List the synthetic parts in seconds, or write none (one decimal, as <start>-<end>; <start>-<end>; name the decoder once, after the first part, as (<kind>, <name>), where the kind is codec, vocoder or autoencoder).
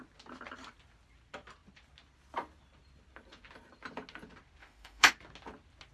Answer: 4.6-5.1 (autoencoder, DAC-VAE)